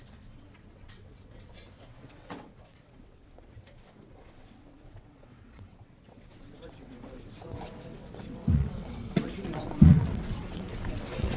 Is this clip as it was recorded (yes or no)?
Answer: no